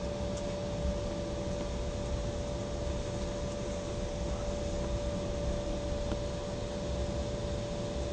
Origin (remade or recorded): recorded